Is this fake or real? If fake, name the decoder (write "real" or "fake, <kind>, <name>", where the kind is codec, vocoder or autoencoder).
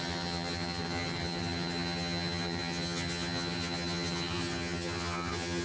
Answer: fake, vocoder, HiFi-GAN